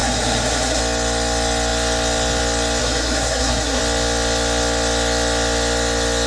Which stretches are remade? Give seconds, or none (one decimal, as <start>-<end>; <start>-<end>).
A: 0.0-0.8; 2.8-3.8